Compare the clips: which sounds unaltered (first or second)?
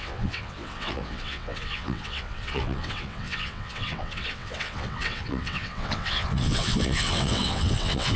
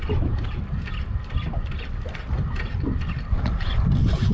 second